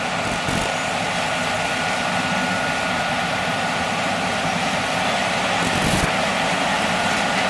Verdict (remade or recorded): recorded